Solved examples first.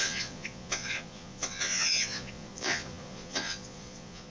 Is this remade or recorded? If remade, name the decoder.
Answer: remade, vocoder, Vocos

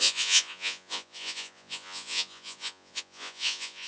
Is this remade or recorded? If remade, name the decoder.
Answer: remade, vocoder, Vocos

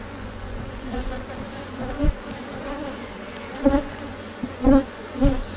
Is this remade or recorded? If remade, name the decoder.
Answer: remade, vocoder, Vocos